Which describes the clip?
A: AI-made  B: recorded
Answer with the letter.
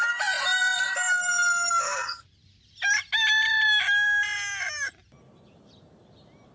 B